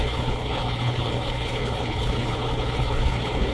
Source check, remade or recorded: remade